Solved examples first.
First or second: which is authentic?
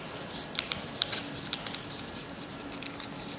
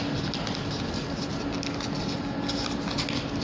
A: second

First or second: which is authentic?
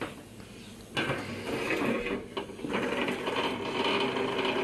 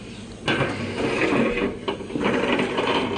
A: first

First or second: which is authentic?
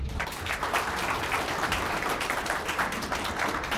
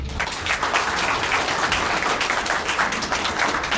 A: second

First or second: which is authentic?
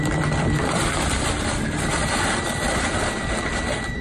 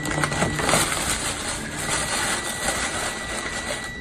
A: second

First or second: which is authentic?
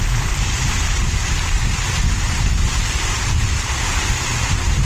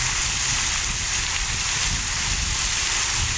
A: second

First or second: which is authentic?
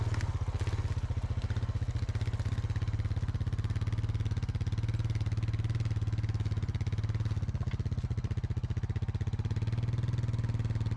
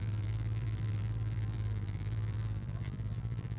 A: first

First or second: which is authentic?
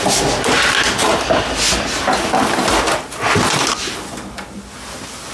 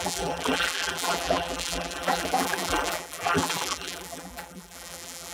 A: first